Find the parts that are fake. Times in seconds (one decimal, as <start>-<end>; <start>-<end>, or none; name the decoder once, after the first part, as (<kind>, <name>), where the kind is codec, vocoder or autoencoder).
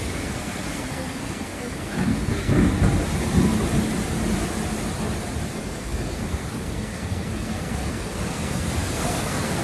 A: 0.0-2.7 (codec, SNAC); 5.5-9.6